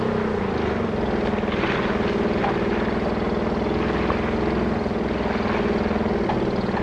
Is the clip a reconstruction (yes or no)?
no